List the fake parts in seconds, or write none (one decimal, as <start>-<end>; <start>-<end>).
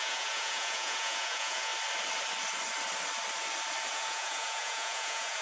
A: 0.0-1.7; 3.9-5.4